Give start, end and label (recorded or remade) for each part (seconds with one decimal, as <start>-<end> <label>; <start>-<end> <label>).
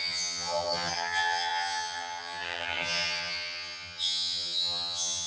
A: 0.0-5.3 remade